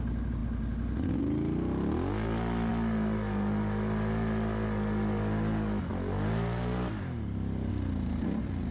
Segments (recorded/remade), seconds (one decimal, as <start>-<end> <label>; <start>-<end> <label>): 0.0-8.7 recorded